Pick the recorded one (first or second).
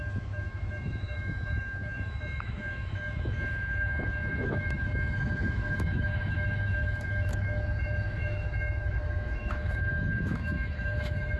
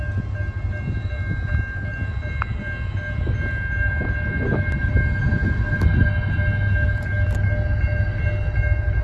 second